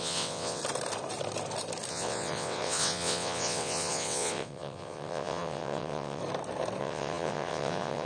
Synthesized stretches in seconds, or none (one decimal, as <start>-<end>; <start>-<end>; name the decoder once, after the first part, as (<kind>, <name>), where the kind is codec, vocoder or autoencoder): 0.0-0.6 (vocoder, WaveNeXt); 1.9-6.2; 6.8-8.1